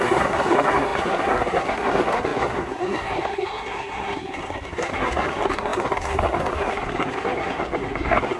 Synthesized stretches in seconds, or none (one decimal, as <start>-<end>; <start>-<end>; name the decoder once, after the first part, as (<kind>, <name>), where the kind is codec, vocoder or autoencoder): 0.0-8.4 (codec, SNAC)